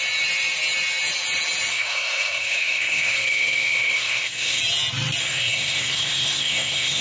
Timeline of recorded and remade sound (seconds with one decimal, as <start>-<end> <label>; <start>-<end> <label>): 0.0-1.7 recorded; 1.7-4.6 remade; 4.6-5.2 recorded; 5.2-7.0 remade